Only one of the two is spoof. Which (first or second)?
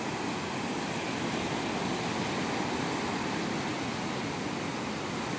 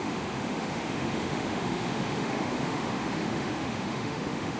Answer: second